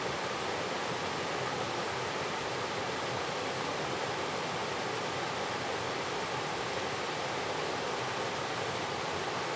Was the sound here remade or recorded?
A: recorded